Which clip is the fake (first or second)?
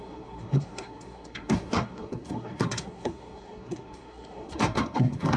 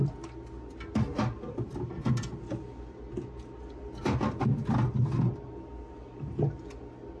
first